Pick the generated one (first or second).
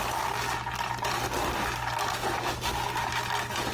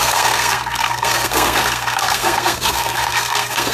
second